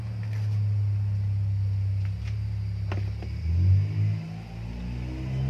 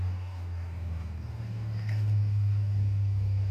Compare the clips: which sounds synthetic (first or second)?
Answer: second